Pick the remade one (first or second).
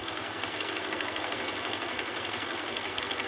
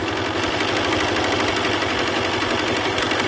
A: first